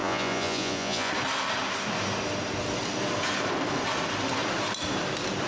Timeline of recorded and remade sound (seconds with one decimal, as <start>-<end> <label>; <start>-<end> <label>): 0.0-1.1 remade; 1.1-5.5 recorded